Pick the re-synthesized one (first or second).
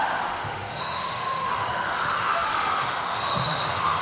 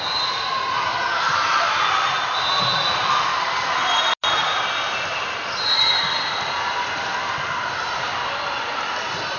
first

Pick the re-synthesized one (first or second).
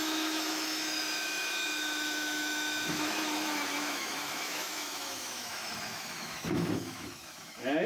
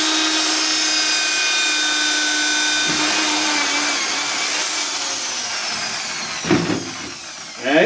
first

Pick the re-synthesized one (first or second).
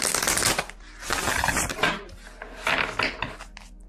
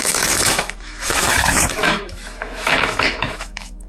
second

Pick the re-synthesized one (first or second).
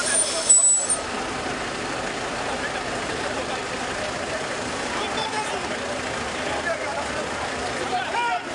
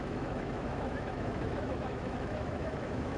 second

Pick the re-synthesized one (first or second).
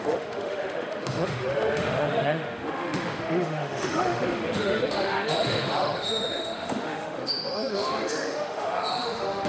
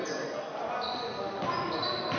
first